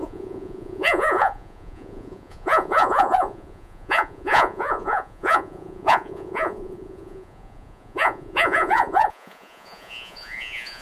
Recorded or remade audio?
remade